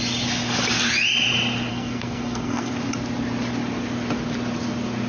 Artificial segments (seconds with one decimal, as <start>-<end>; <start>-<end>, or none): 1.7-2.7